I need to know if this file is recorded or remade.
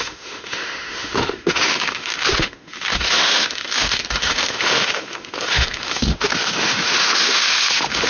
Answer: remade